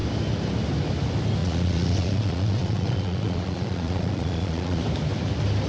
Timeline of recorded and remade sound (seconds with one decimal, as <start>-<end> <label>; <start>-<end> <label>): 0.0-1.4 recorded; 1.4-4.8 remade; 4.8-5.7 recorded